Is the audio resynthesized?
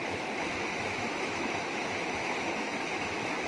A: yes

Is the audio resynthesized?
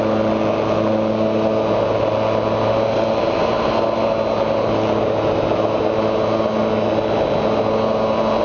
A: no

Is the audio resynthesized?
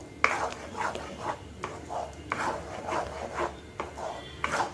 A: no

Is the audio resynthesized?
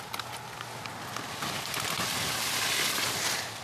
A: no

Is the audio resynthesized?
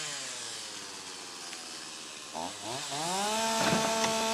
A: no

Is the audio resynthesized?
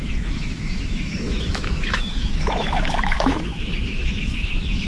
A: yes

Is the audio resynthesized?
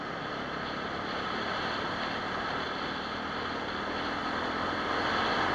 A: no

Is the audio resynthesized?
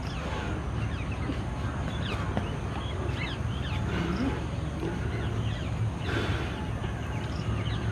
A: no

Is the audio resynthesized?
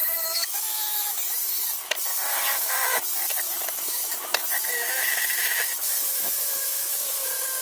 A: yes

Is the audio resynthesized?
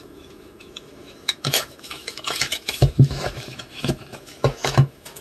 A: yes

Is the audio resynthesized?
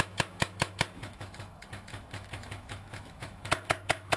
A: yes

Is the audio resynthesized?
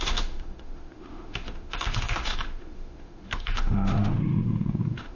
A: yes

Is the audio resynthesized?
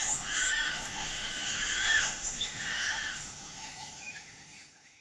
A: yes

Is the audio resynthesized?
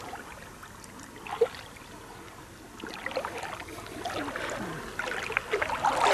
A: no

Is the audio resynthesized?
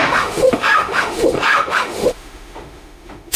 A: yes